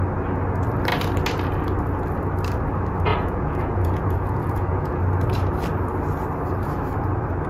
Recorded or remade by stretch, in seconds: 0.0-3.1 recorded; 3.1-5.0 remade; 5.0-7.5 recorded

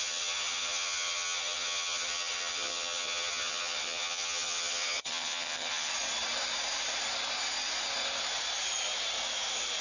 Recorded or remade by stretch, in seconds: 0.0-5.9 remade; 5.9-9.8 recorded

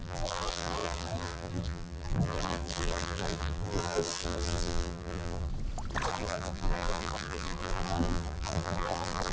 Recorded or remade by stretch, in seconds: 0.0-5.5 remade; 5.5-6.1 recorded; 6.1-9.3 remade